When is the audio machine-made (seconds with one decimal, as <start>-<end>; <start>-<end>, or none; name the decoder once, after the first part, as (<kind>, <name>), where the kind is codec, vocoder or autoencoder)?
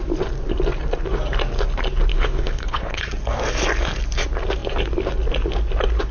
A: 2.1-3.0 (codec, HILCodec)